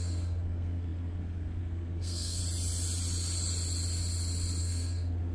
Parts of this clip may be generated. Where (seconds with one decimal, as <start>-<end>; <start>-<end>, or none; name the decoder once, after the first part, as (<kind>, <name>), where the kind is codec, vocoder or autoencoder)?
0.0-2.4 (codec, SNAC); 4.6-5.3